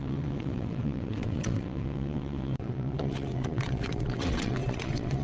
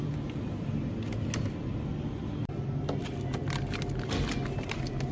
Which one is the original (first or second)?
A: second